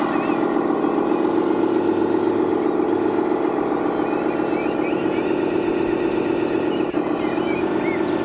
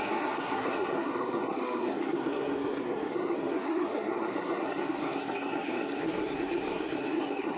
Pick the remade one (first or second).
second